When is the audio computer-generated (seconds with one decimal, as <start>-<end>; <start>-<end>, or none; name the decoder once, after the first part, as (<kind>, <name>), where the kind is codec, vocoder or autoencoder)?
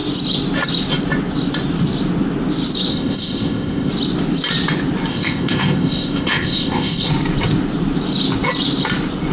2.9-3.9 (codec, ZipCodec); 5.1-7.1